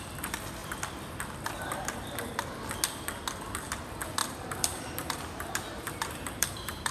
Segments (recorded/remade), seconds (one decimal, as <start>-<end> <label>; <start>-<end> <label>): 0.0-4.2 recorded; 4.2-6.9 remade